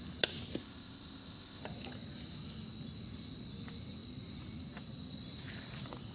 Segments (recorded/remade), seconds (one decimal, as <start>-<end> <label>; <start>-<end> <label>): 0.0-0.6 recorded; 0.6-1.6 remade; 1.6-6.1 recorded